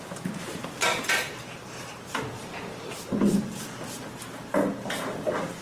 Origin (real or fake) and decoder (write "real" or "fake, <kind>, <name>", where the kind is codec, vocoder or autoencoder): fake, vocoder, BigVGAN v2